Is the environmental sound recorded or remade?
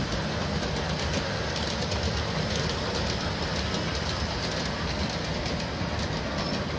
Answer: recorded